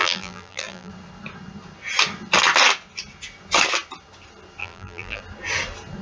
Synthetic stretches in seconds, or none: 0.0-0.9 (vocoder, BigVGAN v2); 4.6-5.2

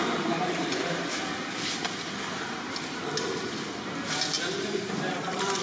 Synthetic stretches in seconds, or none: 0.0-1.2 (vocoder, BigVGAN v2); 4.6-5.6

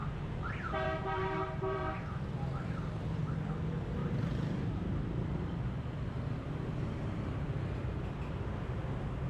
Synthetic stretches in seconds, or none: 0.0-2.0 (vocoder, BigVGAN v2); 4.0-4.9